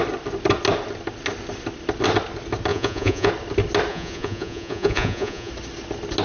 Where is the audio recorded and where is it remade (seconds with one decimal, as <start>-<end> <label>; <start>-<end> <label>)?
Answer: 0.0-2.7 recorded; 2.7-3.3 remade; 3.3-3.9 recorded; 3.9-5.5 remade; 5.5-6.2 recorded